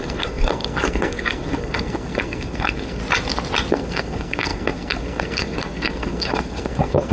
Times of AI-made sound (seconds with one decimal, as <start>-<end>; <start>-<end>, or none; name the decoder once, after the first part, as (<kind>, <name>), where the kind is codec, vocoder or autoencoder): 0.0-3.0 (codec, SNAC); 3.7-7.1